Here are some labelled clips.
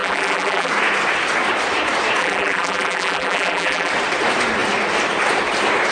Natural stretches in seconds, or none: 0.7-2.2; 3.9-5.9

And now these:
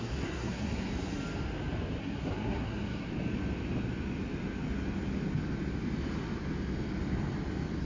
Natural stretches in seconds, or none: 0.9-2.0; 3.1-7.8